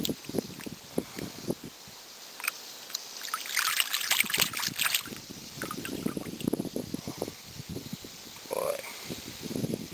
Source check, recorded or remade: recorded